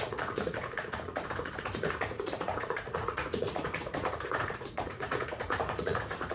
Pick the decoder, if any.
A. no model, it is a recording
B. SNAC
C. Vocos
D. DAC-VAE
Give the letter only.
C